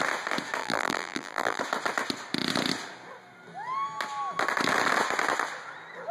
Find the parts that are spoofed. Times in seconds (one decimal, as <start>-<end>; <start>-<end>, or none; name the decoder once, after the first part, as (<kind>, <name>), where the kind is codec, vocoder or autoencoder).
0.6-1.6 (vocoder, BigVGAN v2)